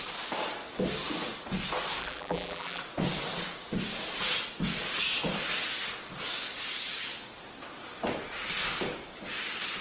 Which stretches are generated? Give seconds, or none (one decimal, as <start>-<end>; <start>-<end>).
2.0-2.8